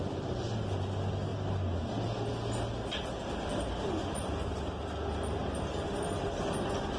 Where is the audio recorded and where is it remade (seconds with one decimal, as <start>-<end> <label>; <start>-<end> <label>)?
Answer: 0.0-7.0 recorded